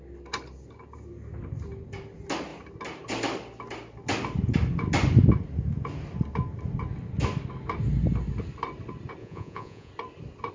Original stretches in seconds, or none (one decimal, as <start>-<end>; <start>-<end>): 0.0-9.2; 9.9-10.5